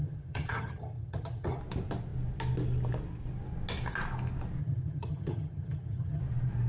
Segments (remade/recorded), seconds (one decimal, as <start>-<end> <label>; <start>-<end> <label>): 0.0-1.6 remade; 1.6-4.6 recorded; 4.6-6.2 remade; 6.2-6.7 recorded